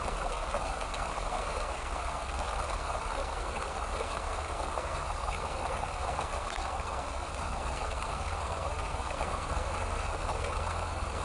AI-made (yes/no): yes